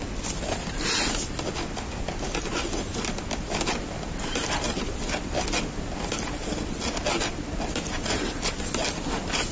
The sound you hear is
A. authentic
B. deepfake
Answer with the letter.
A